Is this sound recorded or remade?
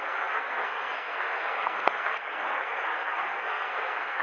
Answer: remade